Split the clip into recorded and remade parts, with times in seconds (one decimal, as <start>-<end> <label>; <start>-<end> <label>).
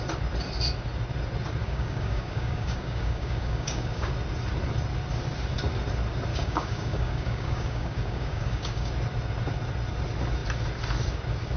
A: 0.0-1.6 recorded; 1.6-4.1 remade; 4.1-6.3 recorded; 6.3-8.9 remade; 8.9-11.6 recorded